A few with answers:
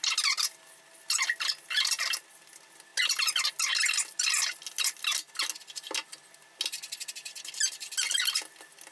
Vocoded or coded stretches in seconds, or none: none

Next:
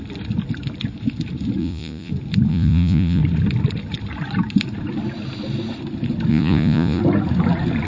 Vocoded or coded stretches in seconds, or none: 1.6-2.1 (vocoder, Vocos); 2.5-3.2; 6.3-7.0

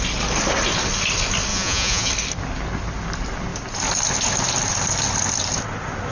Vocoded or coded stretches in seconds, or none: 1.5-2.1 (vocoder, Vocos)